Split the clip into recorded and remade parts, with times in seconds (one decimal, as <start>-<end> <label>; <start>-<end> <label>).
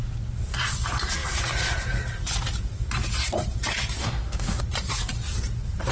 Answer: 0.0-4.0 recorded; 4.0-4.6 remade; 4.6-5.9 recorded